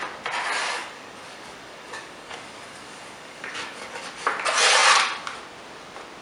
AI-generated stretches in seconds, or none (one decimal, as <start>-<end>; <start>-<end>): 0.6-4.3